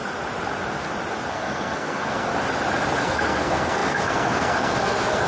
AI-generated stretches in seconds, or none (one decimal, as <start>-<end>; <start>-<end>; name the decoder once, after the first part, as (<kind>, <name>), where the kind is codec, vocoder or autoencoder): 1.3-2.3 (codec, SNAC); 3.0-5.3